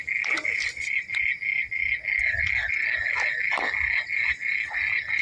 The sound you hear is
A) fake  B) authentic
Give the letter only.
B